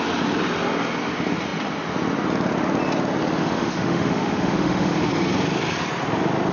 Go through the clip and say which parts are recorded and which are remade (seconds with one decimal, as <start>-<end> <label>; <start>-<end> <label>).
0.0-3.4 recorded; 3.4-5.1 remade; 5.1-6.5 recorded